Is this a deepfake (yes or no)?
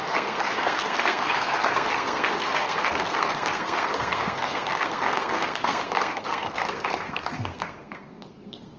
yes